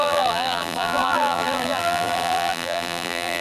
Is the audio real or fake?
fake